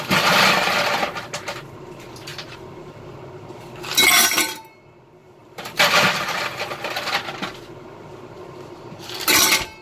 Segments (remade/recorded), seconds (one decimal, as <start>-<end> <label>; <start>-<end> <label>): 0.0-2.3 recorded; 2.3-3.0 remade; 3.0-5.2 recorded; 5.2-6.4 remade; 6.4-9.8 recorded